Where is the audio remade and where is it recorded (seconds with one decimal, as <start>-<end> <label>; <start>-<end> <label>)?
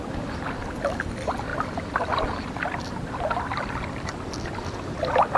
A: 0.0-5.4 recorded